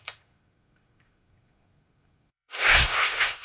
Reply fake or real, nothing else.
fake